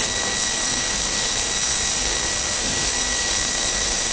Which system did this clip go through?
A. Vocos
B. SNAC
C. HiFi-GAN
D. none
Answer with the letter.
B